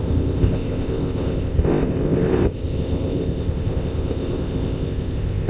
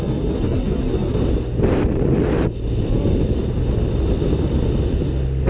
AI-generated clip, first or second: first